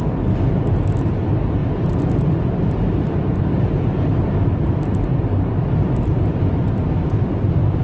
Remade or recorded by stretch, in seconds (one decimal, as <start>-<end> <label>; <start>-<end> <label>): 0.0-7.8 remade